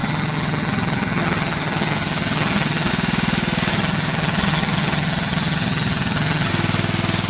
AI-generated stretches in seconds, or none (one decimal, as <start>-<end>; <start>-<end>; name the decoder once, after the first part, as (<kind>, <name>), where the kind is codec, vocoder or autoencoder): 0.0-2.9 (vocoder, HiFi-GAN); 3.7-6.5